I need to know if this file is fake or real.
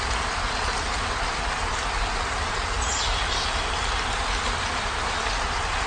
real